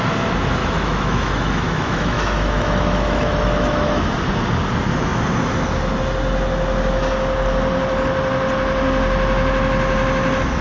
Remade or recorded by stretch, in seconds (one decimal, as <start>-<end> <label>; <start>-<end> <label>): 0.0-0.6 recorded; 0.6-4.0 remade; 4.0-10.6 recorded